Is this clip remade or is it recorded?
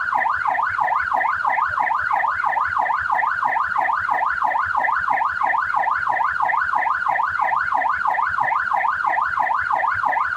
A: recorded